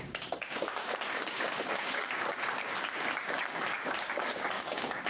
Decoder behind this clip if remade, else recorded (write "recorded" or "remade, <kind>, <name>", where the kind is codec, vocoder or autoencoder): remade, codec, DAC